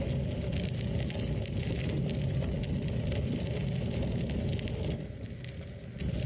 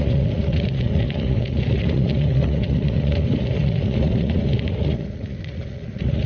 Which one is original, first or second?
first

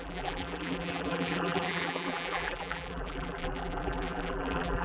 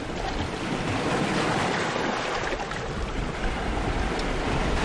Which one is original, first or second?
second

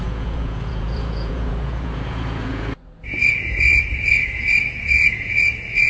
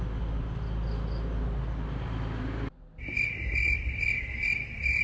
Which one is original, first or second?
second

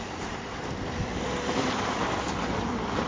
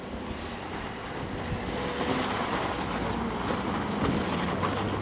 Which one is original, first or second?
second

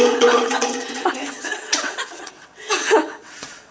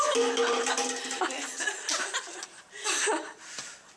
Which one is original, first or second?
second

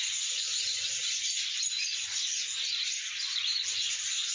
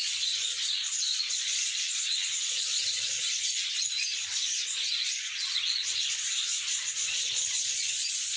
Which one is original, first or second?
first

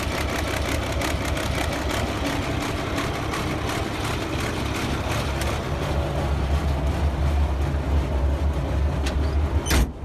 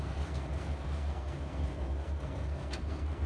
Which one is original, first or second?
first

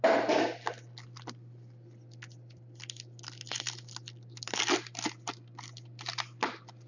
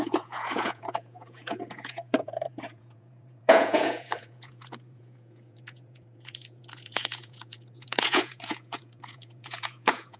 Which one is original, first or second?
first